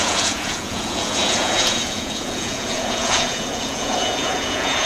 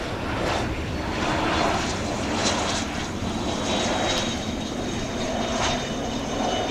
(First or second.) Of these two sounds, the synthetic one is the first